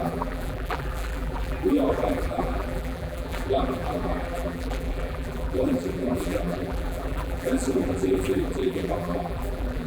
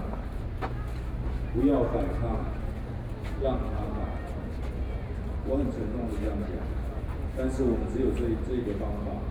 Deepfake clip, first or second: first